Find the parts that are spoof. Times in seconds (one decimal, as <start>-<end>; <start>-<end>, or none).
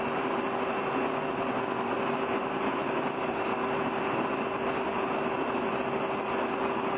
none